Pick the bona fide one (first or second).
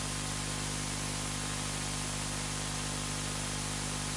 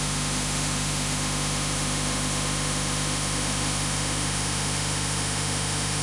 first